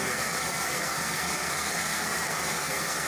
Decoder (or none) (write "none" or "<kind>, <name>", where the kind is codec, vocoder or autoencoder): codec, SNAC